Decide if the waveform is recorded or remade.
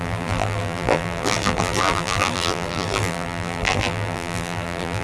remade